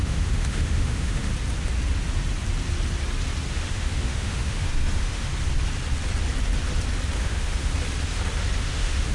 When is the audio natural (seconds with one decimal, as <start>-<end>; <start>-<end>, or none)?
1.3-3.5; 5.3-7.2; 7.7-8.6